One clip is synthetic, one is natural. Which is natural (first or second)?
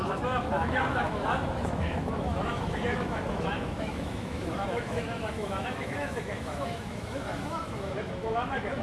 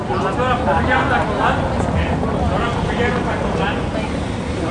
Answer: second